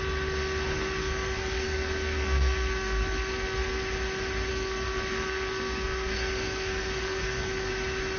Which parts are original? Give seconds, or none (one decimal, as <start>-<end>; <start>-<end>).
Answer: 0.0-1.0; 3.8-4.5; 7.7-8.2